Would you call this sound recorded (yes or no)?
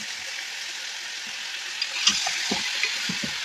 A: yes